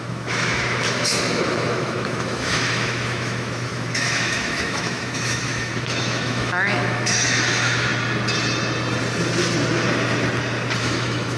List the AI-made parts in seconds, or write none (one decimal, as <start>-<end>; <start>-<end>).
0.0-7.9; 10.8-11.4